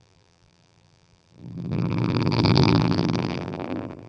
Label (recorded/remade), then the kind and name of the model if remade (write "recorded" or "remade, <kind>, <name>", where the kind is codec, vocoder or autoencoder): remade, vocoder, BigVGAN v2